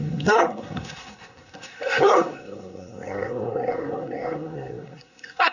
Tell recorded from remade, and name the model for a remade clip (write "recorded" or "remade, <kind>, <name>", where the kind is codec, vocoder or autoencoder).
remade, codec, SNAC